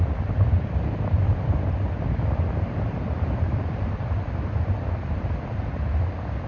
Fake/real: real